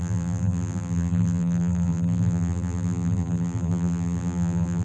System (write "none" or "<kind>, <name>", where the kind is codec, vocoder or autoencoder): vocoder, BigVGAN v2